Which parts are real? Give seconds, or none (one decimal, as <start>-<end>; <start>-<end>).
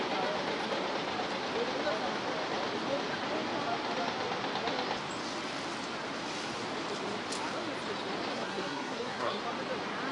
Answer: 0.0-8.3; 9.4-10.1